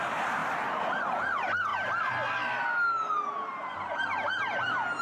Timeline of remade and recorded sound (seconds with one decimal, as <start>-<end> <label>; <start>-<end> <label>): 0.0-5.0 recorded